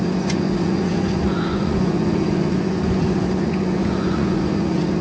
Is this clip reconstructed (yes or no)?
yes